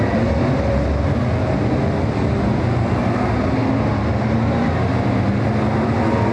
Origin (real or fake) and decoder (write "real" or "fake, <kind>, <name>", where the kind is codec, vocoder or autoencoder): real